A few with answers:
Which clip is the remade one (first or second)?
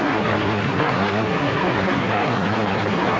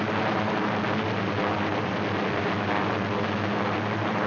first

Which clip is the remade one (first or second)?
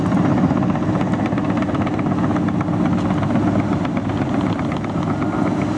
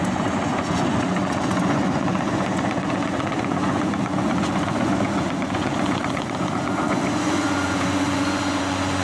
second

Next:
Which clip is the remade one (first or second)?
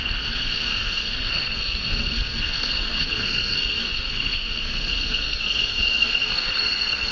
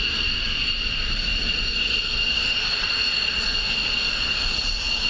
first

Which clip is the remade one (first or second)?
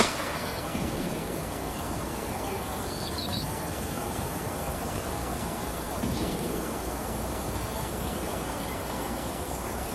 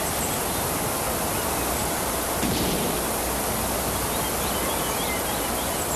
first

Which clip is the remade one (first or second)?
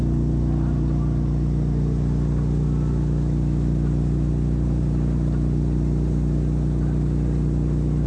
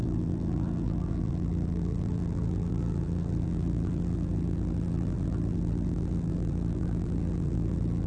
second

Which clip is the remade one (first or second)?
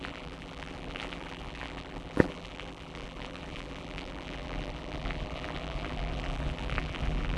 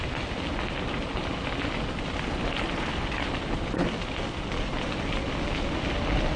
first